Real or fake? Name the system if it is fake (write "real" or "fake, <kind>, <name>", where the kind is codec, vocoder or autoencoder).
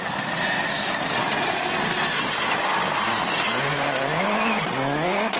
real